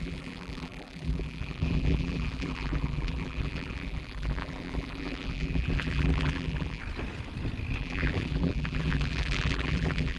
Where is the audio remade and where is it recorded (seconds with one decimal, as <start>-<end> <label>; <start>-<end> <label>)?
0.0-6.8 remade; 6.8-7.8 recorded; 7.8-10.2 remade